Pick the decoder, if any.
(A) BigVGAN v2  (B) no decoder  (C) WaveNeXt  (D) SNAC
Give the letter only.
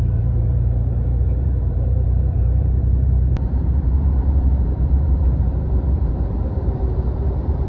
A